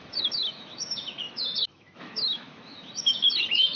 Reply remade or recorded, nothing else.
remade